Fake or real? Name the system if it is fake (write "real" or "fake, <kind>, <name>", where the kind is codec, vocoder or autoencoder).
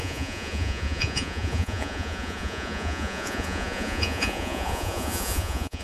fake, vocoder, Vocos